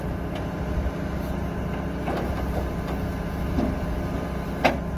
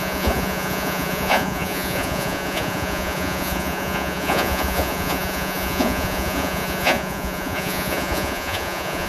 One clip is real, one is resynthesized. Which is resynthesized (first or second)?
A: second